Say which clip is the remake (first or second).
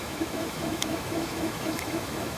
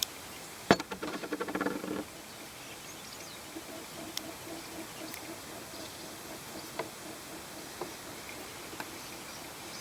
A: first